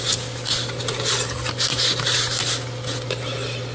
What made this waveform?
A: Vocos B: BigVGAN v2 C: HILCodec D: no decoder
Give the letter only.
D